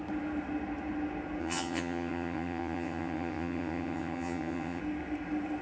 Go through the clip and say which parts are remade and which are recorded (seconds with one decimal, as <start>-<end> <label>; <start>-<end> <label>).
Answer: 0.0-1.4 recorded; 1.4-4.8 remade; 4.8-5.6 recorded